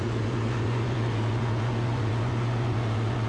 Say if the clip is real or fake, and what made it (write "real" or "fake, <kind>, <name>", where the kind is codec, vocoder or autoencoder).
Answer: fake, vocoder, Vocos